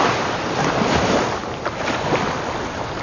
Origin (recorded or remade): recorded